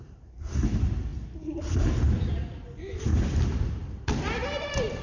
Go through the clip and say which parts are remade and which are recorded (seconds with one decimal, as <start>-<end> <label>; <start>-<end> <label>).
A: 0.0-5.0 remade